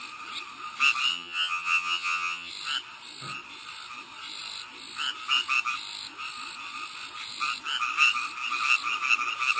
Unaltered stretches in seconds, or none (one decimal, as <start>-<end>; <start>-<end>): 0.0-1.1; 2.5-9.6